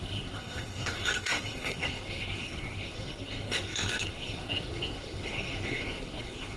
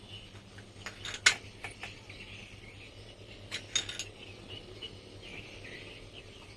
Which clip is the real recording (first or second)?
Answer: second